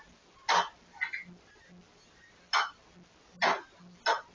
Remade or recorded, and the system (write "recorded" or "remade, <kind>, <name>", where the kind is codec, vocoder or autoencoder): recorded